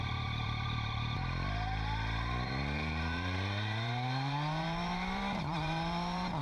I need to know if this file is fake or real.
fake